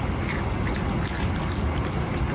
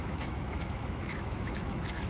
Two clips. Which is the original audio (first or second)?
first